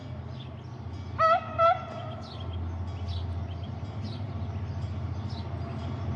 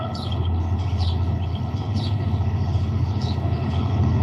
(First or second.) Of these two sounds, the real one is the first